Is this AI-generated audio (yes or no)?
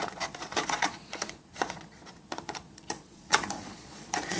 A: yes